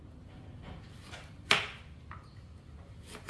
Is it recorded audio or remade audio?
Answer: recorded